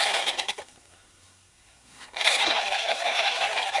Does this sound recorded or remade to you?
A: remade